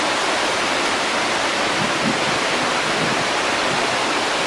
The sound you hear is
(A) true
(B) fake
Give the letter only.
A